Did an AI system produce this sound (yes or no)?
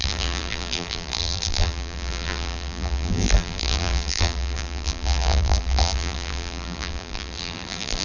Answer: yes